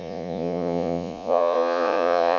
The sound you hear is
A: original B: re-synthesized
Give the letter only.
B